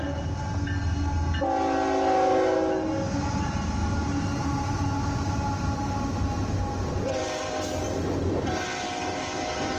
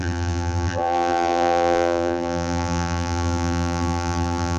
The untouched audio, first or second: first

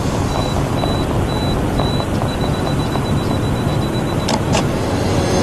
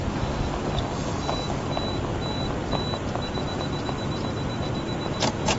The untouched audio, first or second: second